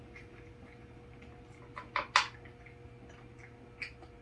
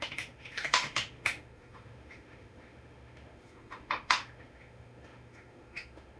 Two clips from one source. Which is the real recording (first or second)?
first